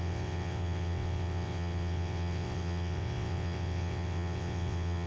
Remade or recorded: remade